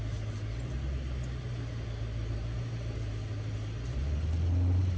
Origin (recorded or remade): recorded